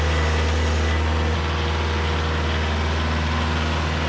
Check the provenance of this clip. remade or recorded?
recorded